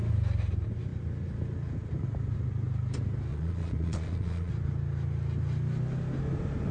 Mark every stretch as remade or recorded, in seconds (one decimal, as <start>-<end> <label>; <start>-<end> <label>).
0.0-3.3 recorded; 3.3-4.5 remade; 4.5-6.7 recorded